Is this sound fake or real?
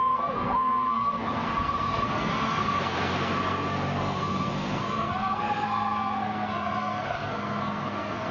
fake